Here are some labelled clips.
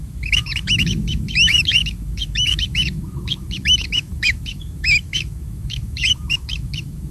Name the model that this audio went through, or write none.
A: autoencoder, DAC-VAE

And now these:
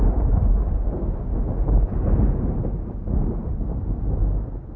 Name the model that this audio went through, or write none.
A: none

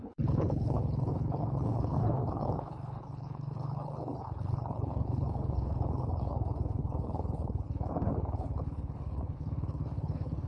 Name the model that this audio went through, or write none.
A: codec, HILCodec